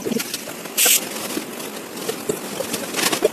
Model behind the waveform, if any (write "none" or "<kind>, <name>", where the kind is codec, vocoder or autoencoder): none